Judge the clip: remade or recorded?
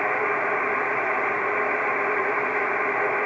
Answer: recorded